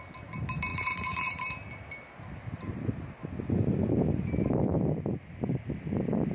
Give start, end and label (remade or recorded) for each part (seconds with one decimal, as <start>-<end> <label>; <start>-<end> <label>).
0.0-0.7 recorded; 0.7-1.4 remade; 1.4-6.3 recorded